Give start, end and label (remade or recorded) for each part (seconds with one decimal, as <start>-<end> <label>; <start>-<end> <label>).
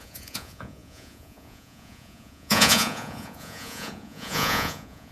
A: 0.0-5.1 remade